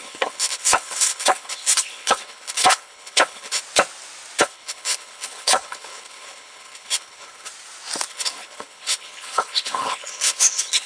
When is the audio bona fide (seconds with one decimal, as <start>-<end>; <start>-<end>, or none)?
3.6-4.4; 7.5-8.1